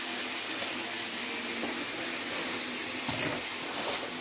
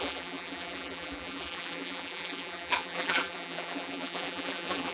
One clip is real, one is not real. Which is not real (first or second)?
second